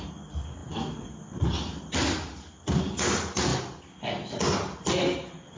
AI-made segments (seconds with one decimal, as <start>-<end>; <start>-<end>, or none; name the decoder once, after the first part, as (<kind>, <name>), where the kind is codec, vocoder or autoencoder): 0.6-2.8 (vocoder, BigVGAN v2)